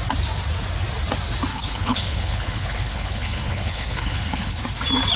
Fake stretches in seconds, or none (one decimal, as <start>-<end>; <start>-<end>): 1.5-4.6